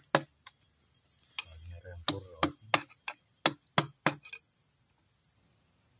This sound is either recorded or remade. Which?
recorded